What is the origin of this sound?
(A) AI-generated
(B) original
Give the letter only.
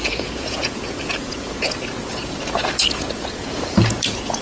A